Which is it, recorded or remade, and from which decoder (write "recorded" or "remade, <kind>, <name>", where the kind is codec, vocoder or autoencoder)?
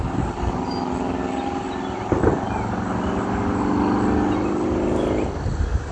recorded